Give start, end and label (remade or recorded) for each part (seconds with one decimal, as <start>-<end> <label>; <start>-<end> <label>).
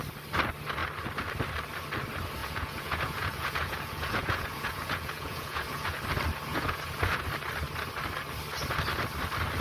0.0-2.4 recorded; 2.4-6.0 remade; 6.0-6.5 recorded; 6.5-7.2 remade; 7.2-9.6 recorded